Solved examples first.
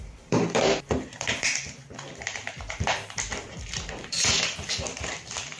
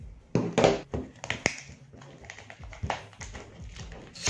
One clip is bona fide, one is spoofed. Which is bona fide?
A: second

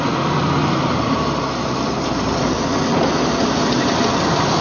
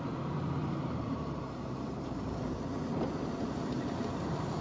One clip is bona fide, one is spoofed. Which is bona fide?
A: first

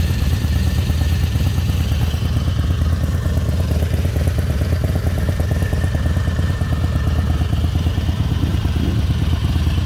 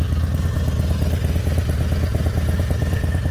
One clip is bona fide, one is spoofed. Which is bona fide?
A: second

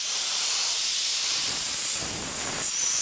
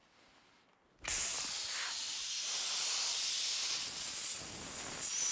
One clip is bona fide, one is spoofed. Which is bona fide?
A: second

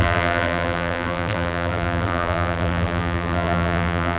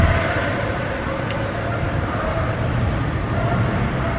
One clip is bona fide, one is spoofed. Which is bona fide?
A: second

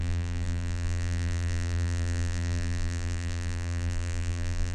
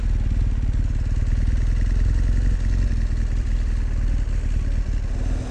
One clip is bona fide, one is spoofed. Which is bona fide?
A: second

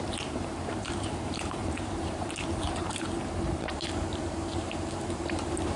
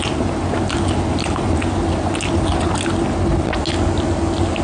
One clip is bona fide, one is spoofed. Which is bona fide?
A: second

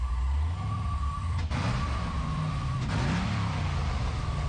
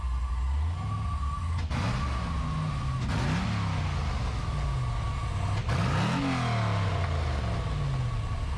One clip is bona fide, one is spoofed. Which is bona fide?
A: second